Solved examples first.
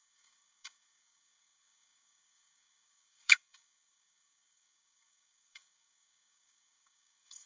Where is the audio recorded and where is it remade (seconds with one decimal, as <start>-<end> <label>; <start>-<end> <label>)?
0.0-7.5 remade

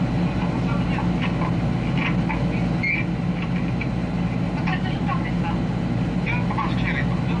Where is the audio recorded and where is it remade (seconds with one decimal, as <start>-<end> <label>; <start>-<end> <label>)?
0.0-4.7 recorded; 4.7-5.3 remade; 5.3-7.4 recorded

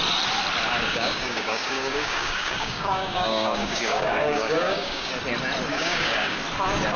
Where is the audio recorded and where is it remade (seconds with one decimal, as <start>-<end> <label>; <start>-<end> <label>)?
0.0-0.9 recorded; 0.9-5.1 remade; 5.1-5.7 recorded; 5.7-6.4 remade; 6.4-7.0 recorded

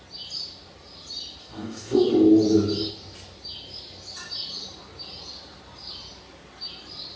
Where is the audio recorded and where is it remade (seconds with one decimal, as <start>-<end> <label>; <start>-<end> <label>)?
0.0-1.4 recorded; 1.4-2.1 remade; 2.1-7.2 recorded